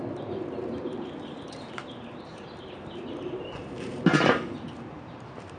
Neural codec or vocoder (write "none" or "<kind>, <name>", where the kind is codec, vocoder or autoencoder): vocoder, BigVGAN v2